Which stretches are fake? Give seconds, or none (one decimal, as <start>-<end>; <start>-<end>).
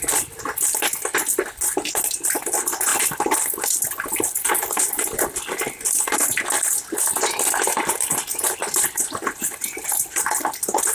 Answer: 2.9-4.8